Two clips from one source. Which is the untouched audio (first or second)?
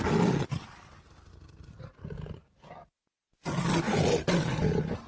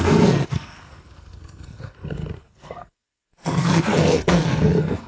first